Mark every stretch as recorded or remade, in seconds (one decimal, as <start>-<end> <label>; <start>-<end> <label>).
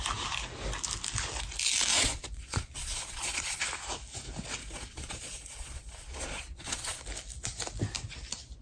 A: 0.0-1.9 recorded; 1.9-3.6 remade; 3.6-4.6 recorded; 4.6-7.0 remade; 7.0-8.6 recorded